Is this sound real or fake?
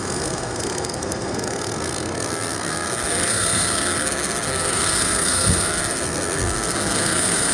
fake